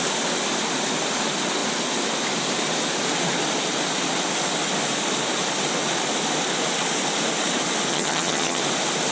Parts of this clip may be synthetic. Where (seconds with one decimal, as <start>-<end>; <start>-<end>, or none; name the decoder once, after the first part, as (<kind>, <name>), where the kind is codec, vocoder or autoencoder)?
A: 7.9-8.6 (vocoder, HiFi-GAN)